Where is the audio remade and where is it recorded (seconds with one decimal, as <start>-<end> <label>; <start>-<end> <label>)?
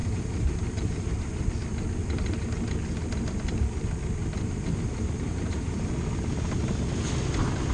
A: 0.0-1.5 remade; 1.5-2.0 recorded; 2.0-2.7 remade; 2.7-4.2 recorded; 4.2-5.9 remade; 5.9-7.7 recorded